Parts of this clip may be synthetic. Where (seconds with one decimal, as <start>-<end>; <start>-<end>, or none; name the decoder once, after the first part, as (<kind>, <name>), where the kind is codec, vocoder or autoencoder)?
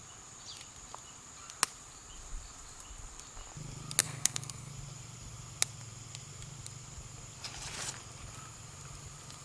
4.0-4.7 (codec, SNAC)